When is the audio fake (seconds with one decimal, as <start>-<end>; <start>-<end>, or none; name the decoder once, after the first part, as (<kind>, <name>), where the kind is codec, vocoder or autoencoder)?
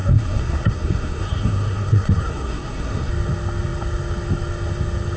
0.0-3.1 (codec, SNAC)